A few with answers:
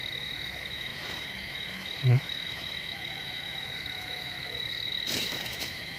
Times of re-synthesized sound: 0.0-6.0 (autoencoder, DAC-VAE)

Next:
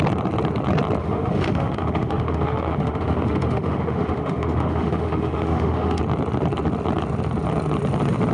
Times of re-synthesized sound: 1.0-6.0 (autoencoder, DAC-VAE)

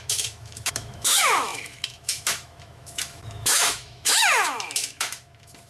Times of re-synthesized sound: 0.0-5.7 (autoencoder, DAC-VAE)